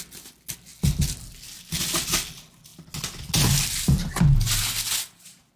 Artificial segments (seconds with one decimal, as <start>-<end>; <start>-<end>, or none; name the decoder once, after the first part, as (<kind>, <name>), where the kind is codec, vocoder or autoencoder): none